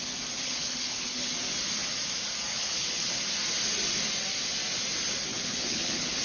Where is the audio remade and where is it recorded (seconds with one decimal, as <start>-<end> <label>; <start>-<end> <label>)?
0.0-0.4 recorded; 0.4-1.3 remade; 1.3-2.5 recorded; 2.5-3.1 remade; 3.1-5.3 recorded; 5.3-6.2 remade